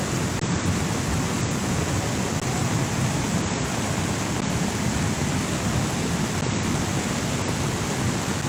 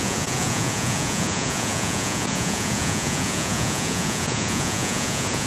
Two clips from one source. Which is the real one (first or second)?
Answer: first